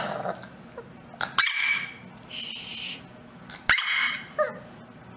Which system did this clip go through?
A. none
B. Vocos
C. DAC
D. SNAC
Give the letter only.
A